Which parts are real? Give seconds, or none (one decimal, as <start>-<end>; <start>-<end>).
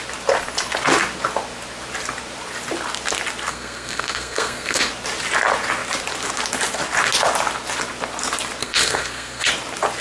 0.0-3.5; 4.9-8.6; 9.5-10.0